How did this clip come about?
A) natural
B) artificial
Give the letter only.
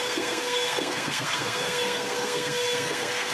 B